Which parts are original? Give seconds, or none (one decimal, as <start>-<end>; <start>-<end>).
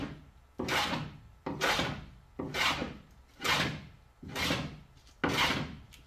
0.0-6.1